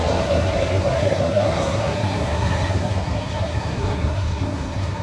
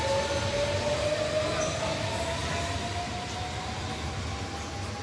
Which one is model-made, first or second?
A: first